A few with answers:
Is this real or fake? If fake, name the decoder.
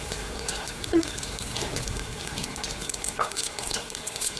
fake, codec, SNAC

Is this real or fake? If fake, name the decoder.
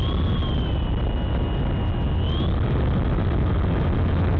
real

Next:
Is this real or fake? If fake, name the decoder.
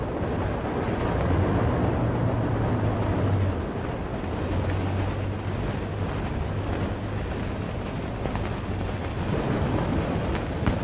real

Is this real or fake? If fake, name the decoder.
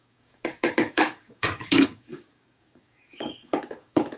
fake, codec, DAC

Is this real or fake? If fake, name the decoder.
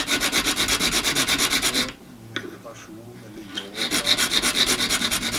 real